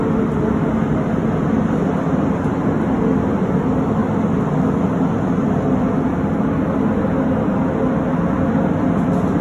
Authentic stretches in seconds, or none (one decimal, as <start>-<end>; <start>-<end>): 0.0-9.4